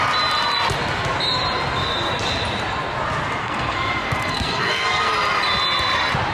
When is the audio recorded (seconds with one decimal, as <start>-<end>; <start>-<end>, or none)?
0.0-3.4; 5.1-6.3